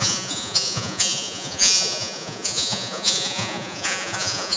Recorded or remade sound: remade